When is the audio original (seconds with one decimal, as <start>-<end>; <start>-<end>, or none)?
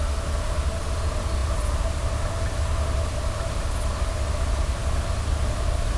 0.0-6.0